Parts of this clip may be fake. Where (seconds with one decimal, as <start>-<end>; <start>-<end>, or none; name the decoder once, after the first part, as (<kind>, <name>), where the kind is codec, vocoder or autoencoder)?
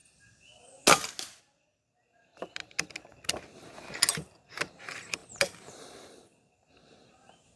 5.2-7.6 (vocoder, BigVGAN v2)